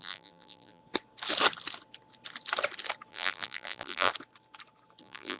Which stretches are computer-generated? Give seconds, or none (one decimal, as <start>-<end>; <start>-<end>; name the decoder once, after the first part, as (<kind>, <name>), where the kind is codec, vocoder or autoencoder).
0.0-0.8 (vocoder, BigVGAN v2); 3.1-4.1; 5.0-5.4